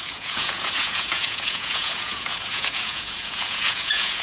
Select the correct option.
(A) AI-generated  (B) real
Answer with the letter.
A